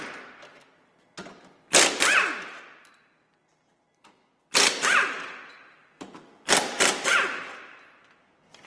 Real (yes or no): yes